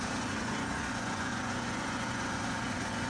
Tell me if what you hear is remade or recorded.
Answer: remade